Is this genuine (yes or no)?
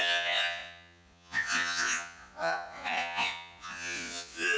no